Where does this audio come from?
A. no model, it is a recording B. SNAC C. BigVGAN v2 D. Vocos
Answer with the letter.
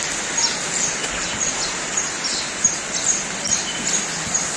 A